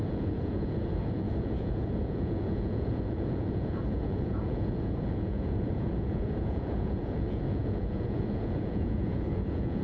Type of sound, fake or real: fake